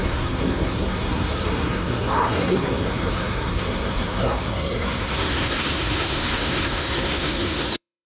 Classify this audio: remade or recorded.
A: remade